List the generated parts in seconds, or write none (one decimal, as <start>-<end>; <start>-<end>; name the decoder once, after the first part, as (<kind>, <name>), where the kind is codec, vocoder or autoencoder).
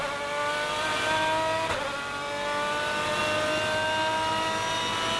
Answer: none